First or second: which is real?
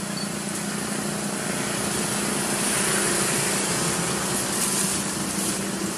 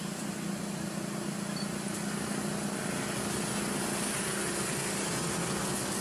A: second